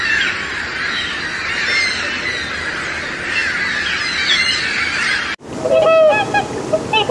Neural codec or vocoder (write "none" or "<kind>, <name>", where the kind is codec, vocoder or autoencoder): none